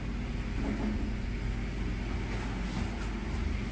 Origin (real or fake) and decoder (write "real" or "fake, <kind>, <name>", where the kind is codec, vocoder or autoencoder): real